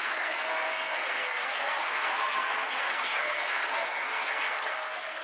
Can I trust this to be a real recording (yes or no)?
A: no